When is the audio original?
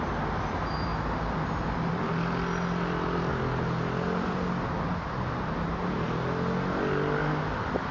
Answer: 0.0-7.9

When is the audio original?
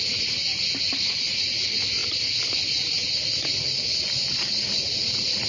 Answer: 0.0-5.5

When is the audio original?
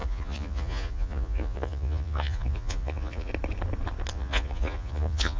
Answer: 3.3-4.1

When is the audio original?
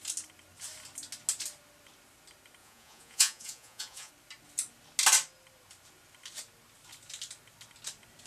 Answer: 0.0-2.6; 4.1-8.3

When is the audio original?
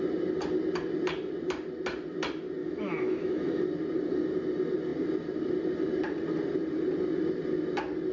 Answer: 0.0-2.6; 3.6-8.1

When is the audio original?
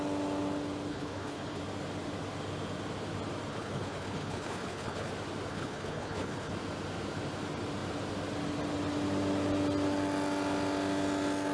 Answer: 0.0-0.9; 1.6-3.5; 5.1-5.5; 6.5-11.5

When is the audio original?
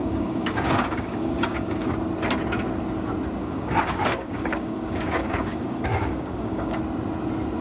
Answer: 1.9-3.4; 6.8-7.6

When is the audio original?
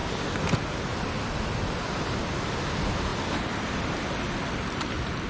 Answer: 0.0-5.3